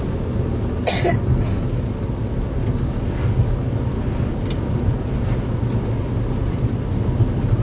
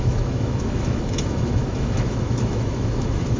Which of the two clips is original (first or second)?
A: first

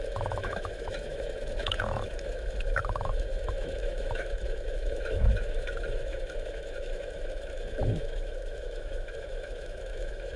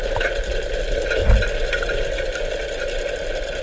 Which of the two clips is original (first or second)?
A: second